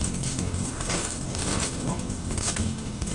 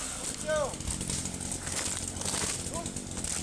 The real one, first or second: second